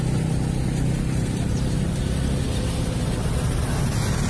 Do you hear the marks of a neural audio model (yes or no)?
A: no